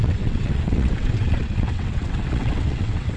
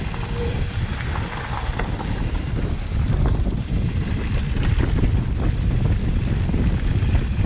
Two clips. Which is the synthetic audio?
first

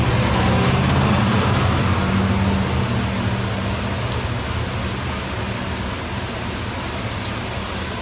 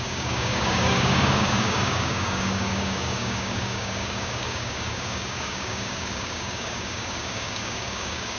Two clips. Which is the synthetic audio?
second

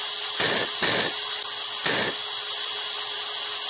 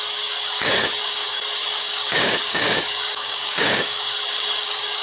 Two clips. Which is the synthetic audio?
second